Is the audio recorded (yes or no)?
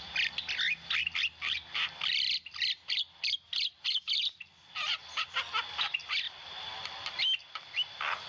no